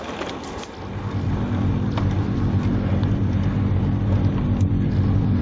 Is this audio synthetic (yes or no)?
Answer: no